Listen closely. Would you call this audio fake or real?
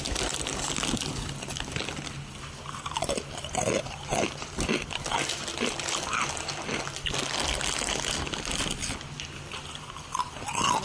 real